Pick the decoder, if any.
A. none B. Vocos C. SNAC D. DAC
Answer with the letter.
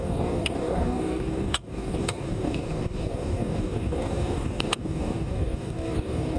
D